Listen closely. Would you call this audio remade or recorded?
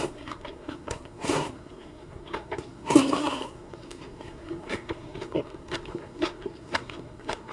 remade